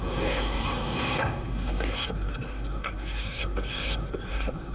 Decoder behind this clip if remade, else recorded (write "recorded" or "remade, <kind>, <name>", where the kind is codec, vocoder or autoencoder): remade, codec, SNAC